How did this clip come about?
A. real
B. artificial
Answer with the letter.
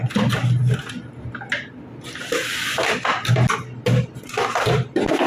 A